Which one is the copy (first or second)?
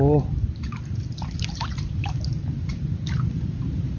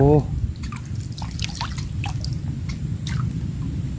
first